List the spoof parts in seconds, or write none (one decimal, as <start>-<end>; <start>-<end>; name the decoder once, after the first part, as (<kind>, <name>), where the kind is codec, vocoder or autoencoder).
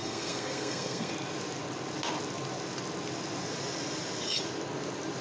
0.0-1.1 (codec, SNAC)